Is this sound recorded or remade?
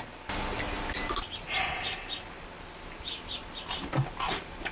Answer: recorded